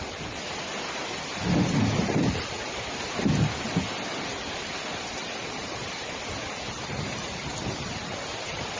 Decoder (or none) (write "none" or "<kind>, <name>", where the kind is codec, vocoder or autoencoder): none